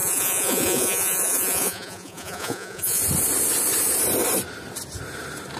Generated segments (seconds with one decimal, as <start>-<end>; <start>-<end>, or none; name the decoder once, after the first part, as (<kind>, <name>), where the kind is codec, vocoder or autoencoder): 0.0-3.0 (vocoder, Vocos)